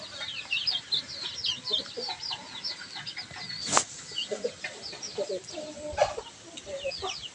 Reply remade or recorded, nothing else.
remade